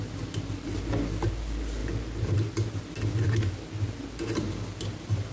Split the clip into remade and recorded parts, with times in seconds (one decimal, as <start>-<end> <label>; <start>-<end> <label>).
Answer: 0.0-5.3 recorded